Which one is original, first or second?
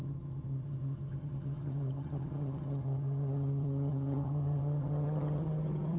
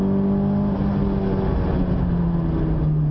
second